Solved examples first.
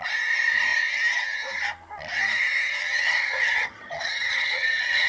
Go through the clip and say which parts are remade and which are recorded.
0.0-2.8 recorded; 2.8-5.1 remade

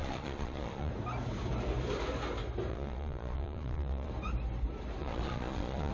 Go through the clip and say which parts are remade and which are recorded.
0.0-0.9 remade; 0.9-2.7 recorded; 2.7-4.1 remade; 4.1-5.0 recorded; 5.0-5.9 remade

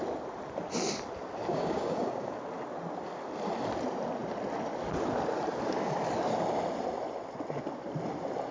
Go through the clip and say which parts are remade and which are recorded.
0.0-1.5 recorded; 1.5-2.3 remade; 2.3-8.5 recorded

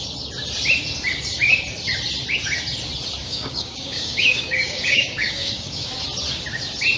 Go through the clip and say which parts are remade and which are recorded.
0.0-3.2 recorded; 3.2-5.9 remade; 5.9-7.0 recorded